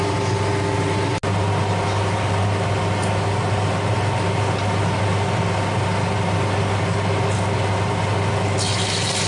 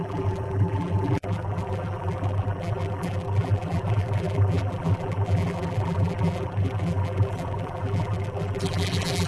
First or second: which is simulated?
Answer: second